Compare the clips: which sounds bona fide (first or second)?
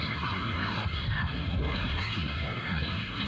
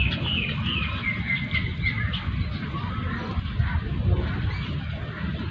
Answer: second